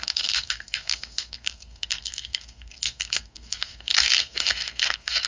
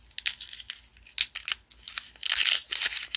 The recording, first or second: second